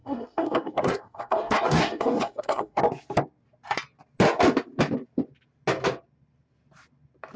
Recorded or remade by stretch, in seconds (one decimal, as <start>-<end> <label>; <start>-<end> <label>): 0.0-2.8 remade; 2.8-7.4 recorded